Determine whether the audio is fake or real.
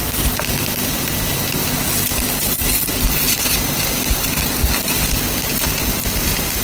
real